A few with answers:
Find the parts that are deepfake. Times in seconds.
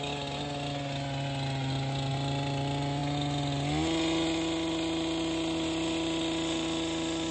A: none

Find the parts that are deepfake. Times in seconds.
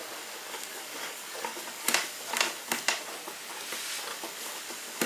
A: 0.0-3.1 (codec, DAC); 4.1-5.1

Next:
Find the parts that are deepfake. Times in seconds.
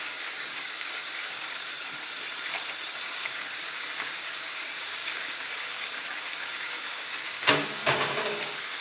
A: 0.0-1.7 (codec, DAC); 3.0-8.8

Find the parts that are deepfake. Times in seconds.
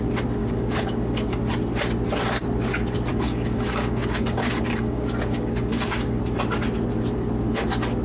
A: 0.4-1.5 (codec, DAC); 3.1-6.2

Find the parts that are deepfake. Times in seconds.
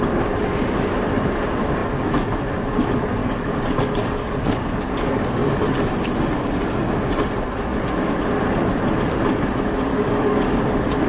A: 3.2-5.2 (codec, DAC); 9.9-10.6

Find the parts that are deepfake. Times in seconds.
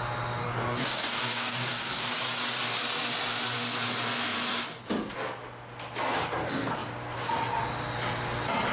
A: 0.4-2.1 (codec, DAC)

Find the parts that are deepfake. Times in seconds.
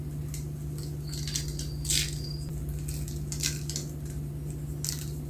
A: none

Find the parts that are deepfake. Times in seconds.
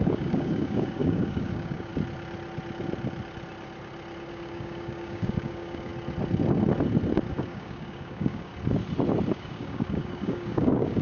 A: 0.0-1.9 (codec, DAC); 4.3-5.9; 7.3-8.5; 9.3-11.0